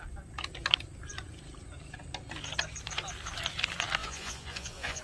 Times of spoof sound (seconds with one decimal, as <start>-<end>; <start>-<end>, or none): 4.0-5.0